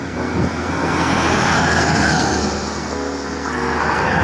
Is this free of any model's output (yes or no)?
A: no